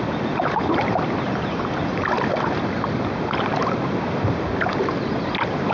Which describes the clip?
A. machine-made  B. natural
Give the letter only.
B